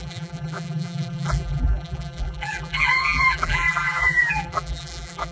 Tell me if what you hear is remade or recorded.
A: remade